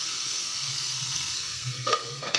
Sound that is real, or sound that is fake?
fake